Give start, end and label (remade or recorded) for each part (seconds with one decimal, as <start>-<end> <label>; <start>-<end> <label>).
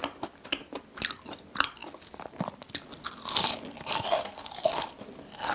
0.0-5.5 remade